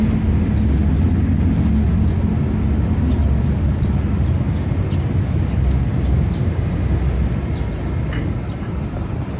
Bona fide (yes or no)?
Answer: yes